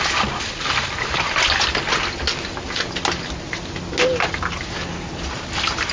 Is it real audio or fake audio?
real